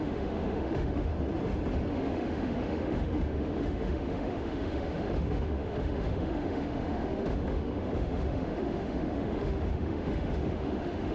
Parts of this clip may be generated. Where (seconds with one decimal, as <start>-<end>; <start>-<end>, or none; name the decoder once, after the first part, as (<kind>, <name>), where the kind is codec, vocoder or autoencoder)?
0.0-1.1 (autoencoder, DAC-VAE); 1.9-11.1